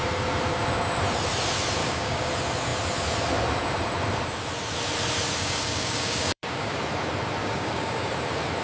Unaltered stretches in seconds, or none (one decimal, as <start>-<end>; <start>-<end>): 0.0-1.8; 2.3-5.4; 6.8-7.4; 8.1-8.6